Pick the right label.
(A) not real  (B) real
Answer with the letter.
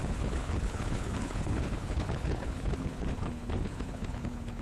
A